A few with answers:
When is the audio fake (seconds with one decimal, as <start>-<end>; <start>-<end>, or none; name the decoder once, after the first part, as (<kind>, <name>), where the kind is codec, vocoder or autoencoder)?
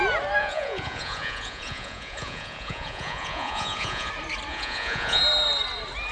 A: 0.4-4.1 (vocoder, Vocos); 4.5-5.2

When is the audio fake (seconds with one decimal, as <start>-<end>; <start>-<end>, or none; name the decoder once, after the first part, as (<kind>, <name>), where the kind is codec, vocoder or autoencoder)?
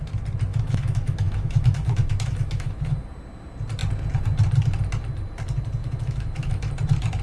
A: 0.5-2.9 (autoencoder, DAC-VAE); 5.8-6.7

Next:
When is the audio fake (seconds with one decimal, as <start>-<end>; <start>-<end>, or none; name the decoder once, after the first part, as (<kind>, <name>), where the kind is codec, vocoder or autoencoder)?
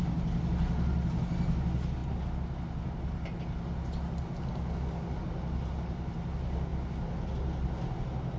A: none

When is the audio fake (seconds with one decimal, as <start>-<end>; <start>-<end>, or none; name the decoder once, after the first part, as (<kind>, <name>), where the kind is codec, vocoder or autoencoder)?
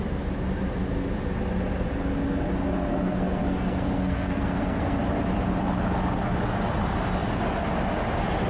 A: 2.9-5.0 (codec, SNAC)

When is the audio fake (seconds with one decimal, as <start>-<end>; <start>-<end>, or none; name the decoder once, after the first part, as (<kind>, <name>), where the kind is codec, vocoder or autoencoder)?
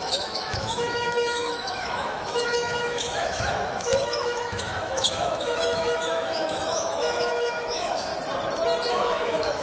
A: 0.0-8.1 (autoencoder, DAC-VAE); 8.9-9.6